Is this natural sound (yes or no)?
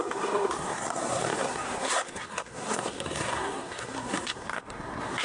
no